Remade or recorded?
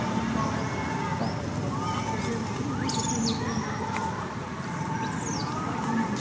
recorded